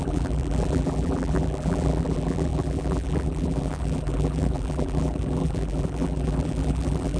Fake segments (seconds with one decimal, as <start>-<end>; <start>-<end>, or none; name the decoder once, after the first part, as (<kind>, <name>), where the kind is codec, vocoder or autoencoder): 0.0-7.2 (vocoder, BigVGAN v2)